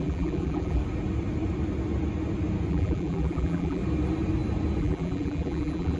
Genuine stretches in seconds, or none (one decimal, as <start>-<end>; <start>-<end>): 0.8-2.7; 3.8-4.8